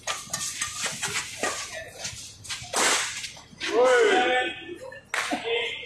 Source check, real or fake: real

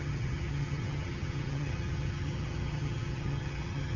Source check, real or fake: fake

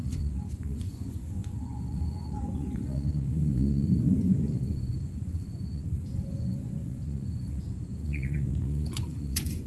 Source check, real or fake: fake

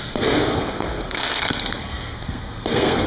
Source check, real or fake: fake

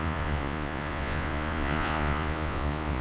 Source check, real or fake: fake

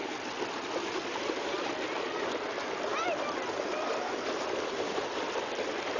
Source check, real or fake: real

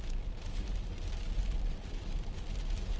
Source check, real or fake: real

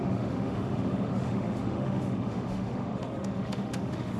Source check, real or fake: fake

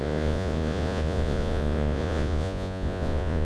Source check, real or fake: fake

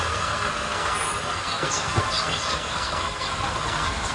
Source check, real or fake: fake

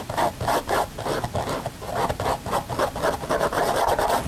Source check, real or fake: real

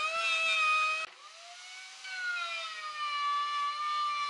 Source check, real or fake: real